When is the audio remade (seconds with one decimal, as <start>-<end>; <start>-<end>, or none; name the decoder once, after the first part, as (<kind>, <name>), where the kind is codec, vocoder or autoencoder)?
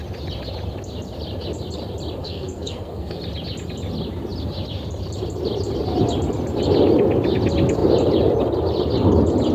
2.2-3.2 (codec, SNAC)